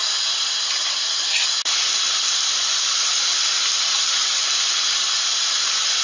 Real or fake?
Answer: real